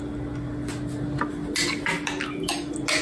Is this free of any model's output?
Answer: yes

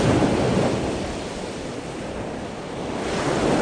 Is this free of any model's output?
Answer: yes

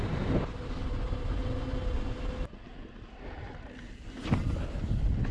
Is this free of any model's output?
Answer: yes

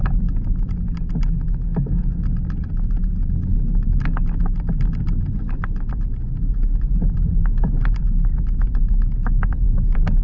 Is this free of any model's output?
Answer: yes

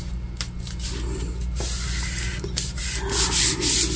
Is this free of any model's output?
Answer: yes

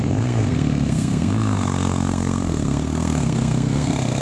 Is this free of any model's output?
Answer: no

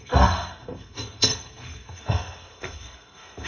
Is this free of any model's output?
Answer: no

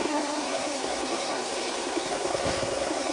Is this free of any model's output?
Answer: no